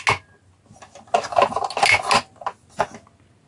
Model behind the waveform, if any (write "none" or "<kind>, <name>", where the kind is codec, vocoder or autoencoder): none